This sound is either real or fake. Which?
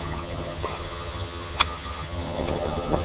fake